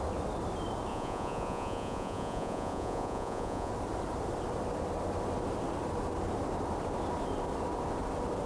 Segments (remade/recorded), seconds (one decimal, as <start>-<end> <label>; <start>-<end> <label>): 0.0-0.9 recorded; 0.9-3.7 remade; 3.7-8.5 recorded